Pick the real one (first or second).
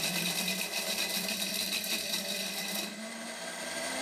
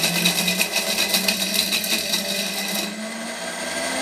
second